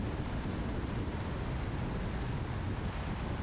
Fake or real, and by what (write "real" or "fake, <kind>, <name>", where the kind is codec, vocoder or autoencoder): real